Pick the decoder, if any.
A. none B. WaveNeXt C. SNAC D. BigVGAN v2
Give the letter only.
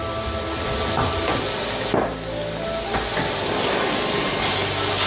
A